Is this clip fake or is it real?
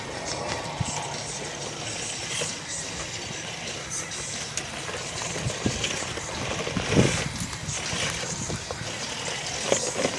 real